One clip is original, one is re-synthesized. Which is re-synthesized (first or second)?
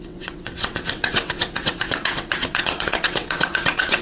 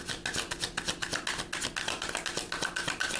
first